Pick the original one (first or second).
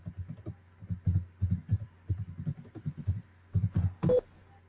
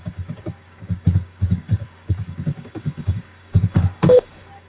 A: first